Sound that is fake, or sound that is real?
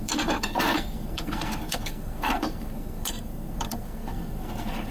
fake